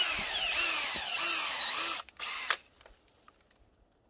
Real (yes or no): yes